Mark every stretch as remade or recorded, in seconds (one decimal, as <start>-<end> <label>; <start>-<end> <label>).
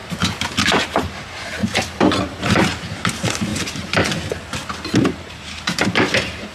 0.0-1.6 remade; 1.6-2.4 recorded; 2.4-3.5 remade; 3.5-5.0 recorded; 5.0-6.5 remade